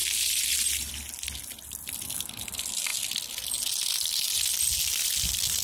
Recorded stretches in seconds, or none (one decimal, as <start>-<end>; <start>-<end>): 0.9-5.6